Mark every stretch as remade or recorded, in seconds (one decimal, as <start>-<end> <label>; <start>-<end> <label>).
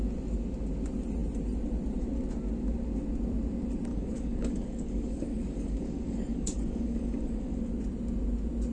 0.0-3.9 recorded; 3.9-7.6 remade; 7.6-8.7 recorded